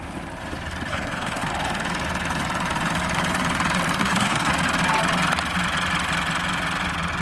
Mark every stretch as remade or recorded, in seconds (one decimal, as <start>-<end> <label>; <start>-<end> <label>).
0.0-0.9 recorded; 0.9-1.5 remade; 1.5-4.0 recorded; 4.0-4.5 remade; 4.5-7.2 recorded